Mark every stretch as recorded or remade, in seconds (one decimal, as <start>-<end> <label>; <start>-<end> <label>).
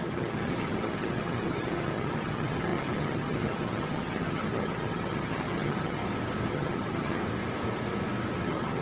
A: 0.0-6.0 remade; 6.0-6.5 recorded; 6.5-7.2 remade; 7.2-8.4 recorded; 8.4-8.8 remade